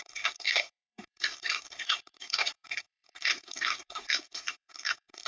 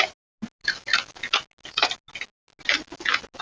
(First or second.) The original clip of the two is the second